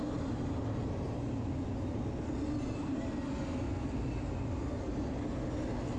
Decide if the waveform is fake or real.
real